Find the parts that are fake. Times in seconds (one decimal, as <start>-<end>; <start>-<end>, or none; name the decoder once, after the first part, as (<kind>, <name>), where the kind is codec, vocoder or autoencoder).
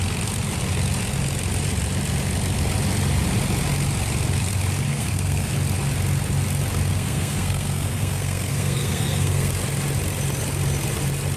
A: 4.9-5.5 (codec, SNAC); 6.9-9.5